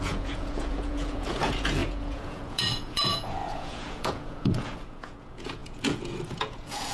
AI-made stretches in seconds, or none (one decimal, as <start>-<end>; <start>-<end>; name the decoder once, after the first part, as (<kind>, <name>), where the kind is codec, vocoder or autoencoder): 0.0-6.9 (vocoder, Vocos)